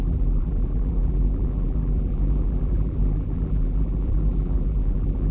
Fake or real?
fake